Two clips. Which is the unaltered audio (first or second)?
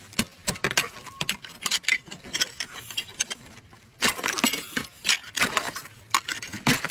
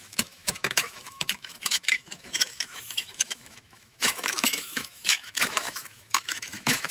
first